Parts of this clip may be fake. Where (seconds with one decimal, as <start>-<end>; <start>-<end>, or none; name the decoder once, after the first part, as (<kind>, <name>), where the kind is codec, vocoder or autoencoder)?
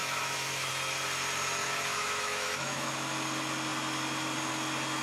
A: 0.0-0.7 (autoencoder, DAC-VAE); 1.6-2.9